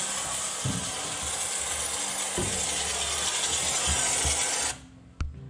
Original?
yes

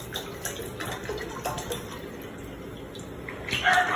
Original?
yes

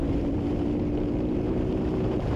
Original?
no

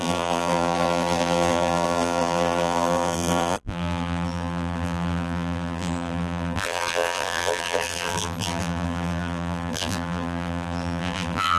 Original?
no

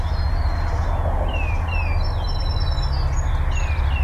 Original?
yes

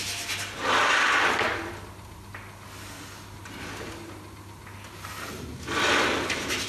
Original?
yes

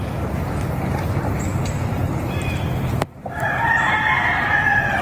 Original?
yes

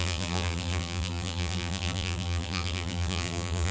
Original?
no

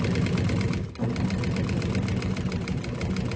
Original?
yes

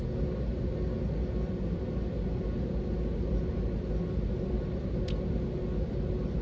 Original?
yes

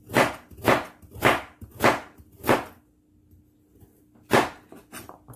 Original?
yes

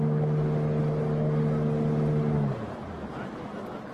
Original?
yes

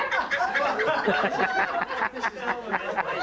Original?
no